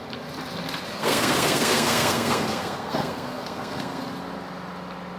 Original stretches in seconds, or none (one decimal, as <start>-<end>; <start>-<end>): 0.0-0.9; 4.0-5.2